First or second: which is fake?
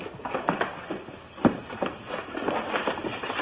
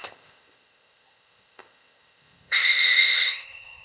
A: second